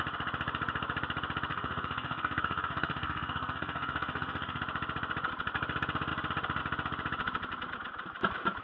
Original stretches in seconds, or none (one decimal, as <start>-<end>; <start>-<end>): 0.0-1.5; 4.6-8.6